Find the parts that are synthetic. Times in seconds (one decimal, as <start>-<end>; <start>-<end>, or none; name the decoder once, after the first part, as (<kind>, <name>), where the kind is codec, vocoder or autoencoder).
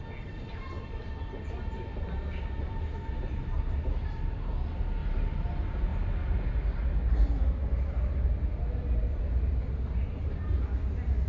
none